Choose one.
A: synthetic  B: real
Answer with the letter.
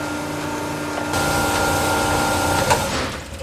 B